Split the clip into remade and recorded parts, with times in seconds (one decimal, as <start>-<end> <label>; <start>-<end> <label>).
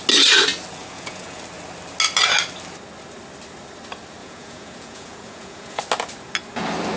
0.0-0.8 recorded; 0.8-1.4 remade; 1.4-4.2 recorded; 4.2-5.8 remade; 5.8-7.0 recorded